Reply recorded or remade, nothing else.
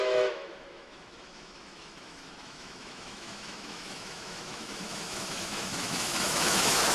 remade